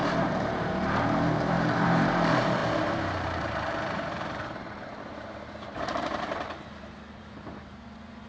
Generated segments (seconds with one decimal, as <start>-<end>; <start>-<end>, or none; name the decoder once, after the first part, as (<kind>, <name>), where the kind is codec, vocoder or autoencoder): 0.0-8.3 (vocoder, BigVGAN v2)